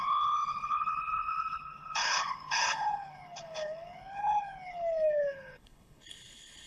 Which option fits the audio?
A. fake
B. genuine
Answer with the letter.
A